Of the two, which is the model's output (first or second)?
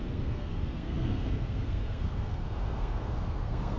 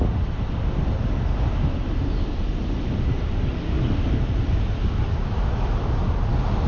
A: first